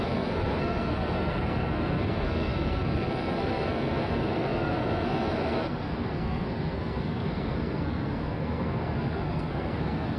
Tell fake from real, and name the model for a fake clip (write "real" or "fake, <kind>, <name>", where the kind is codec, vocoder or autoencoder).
fake, codec, SNAC